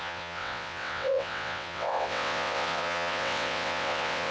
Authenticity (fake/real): fake